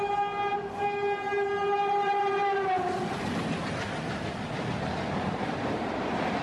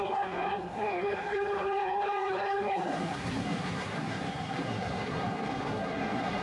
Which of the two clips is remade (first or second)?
second